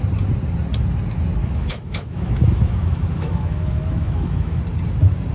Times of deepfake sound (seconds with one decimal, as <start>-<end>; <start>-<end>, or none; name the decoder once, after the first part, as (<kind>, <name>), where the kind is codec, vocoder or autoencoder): 1.4-4.6 (autoencoder, DAC-VAE)